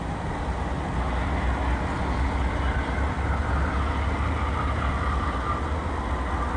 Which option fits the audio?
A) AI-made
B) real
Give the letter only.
B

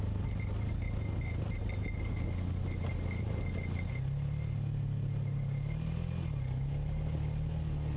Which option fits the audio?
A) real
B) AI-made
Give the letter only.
A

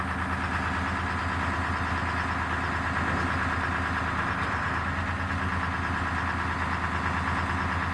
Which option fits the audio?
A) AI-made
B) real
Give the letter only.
B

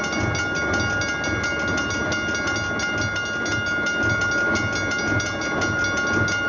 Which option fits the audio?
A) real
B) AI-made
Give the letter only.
A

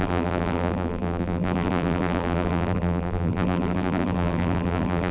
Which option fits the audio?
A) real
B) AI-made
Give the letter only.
B